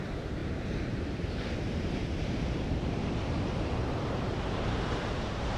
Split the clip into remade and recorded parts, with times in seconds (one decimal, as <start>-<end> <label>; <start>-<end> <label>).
0.0-0.4 recorded; 0.4-1.5 remade; 1.5-2.0 recorded; 2.0-5.6 remade